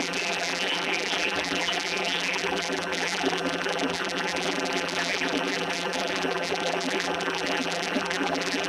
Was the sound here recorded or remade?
remade